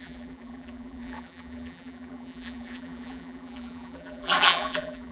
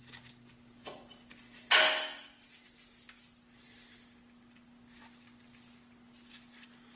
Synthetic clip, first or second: first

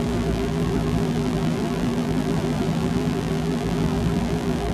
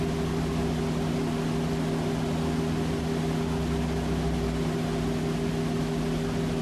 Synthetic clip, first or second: first